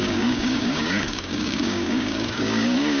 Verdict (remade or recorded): remade